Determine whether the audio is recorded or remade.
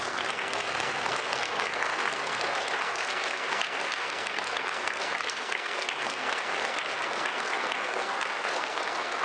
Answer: remade